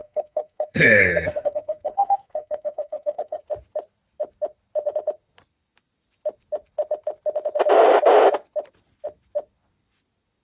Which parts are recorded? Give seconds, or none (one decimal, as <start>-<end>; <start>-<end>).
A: 3.4-10.4